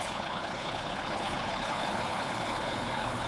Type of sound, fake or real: fake